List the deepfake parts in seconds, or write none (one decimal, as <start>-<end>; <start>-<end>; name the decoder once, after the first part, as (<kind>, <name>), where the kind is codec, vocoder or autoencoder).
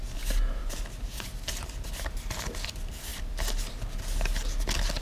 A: 0.6-1.7 (vocoder, BigVGAN v2)